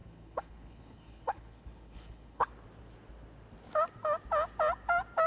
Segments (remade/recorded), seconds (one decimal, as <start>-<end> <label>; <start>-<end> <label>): 0.0-2.5 remade; 2.5-5.3 recorded